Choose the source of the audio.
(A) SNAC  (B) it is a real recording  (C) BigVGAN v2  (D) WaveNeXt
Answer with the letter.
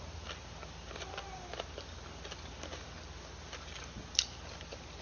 B